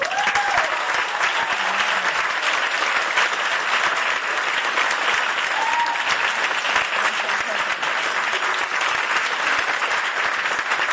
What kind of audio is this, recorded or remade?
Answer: recorded